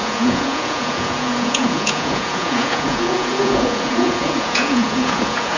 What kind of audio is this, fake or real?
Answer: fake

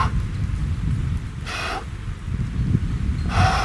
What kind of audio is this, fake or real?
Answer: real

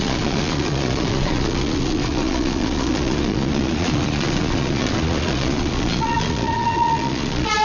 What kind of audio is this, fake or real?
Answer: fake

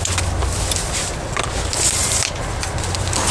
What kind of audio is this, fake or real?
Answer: real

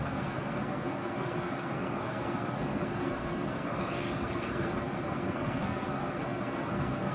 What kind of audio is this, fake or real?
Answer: fake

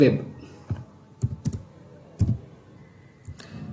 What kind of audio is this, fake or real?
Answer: real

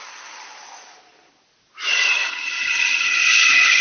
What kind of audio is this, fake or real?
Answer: real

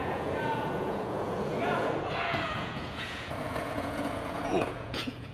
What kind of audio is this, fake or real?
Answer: fake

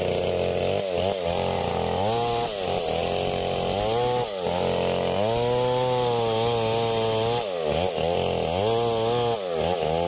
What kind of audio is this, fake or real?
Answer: real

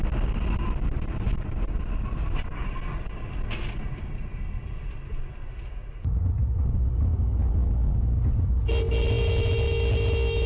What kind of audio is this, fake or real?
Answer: real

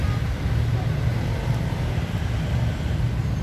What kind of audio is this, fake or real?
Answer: real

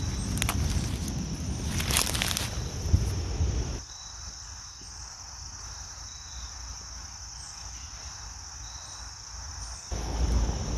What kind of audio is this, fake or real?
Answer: real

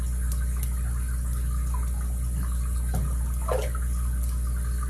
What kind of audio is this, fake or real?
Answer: real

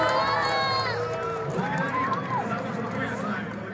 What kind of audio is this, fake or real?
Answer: real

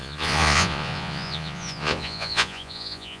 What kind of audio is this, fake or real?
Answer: fake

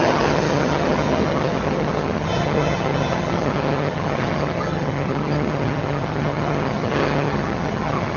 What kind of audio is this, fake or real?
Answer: fake